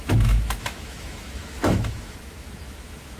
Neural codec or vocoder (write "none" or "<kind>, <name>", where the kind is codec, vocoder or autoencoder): autoencoder, DAC-VAE